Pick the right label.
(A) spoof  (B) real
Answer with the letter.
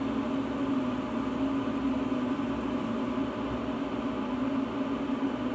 B